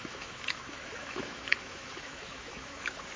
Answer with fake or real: fake